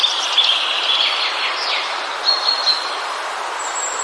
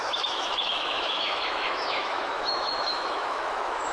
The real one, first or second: first